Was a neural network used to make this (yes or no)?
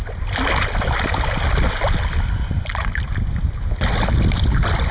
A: no